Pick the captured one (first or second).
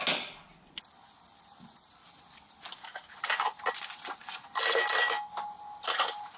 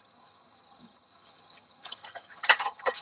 first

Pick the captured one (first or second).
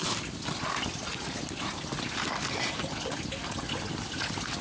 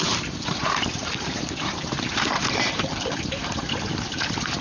first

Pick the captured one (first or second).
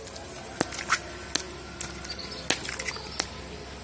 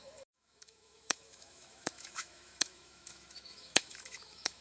first